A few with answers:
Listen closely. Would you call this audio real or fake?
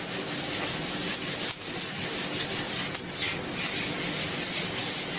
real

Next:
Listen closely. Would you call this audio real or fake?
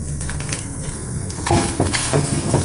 fake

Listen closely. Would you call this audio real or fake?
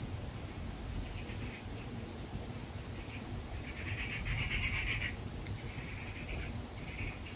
real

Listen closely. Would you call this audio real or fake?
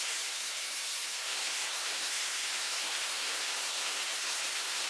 fake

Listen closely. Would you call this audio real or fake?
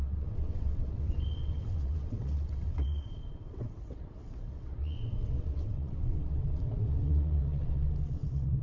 fake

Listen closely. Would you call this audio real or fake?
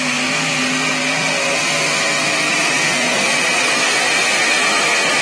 real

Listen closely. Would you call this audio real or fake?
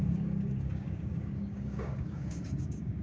fake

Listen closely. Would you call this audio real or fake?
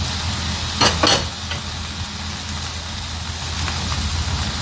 real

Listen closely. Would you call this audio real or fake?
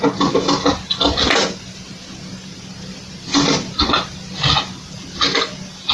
real